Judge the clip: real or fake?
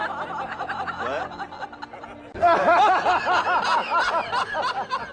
real